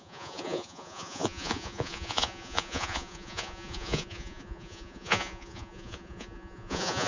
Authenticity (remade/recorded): remade